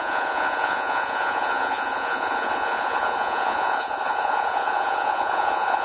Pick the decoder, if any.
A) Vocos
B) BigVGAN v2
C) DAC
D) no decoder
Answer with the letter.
A